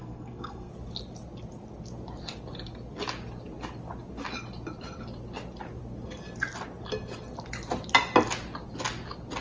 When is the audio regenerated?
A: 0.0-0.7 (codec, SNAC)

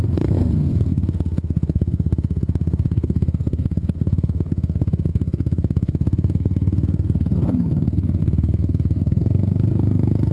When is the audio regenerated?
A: 0.0-10.3 (codec, SNAC)

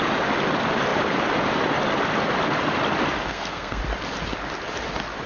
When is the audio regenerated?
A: 3.3-3.8 (codec, SNAC)

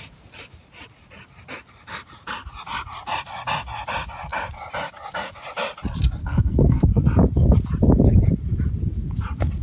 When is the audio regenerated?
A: 6.2-7.0 (codec, SNAC)

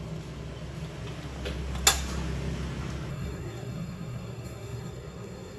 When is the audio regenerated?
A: 3.1-5.6 (codec, SNAC)